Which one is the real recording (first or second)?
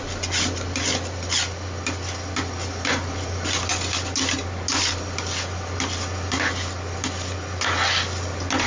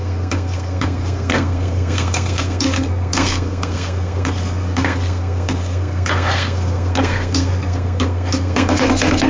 first